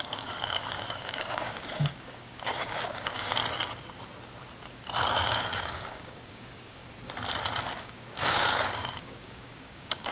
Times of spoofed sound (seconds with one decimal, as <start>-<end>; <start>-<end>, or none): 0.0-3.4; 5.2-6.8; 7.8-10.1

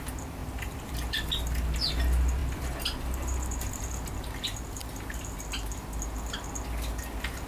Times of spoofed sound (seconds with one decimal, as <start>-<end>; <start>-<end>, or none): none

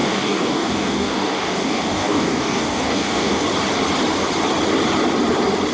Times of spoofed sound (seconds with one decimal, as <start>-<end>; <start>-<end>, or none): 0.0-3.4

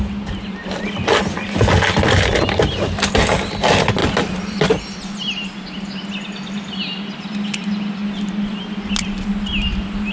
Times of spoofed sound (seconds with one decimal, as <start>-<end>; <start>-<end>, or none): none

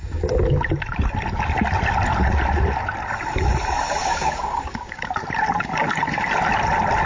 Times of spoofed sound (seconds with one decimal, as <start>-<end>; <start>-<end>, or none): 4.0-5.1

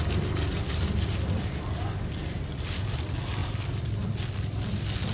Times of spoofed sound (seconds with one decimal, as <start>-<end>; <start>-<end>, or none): none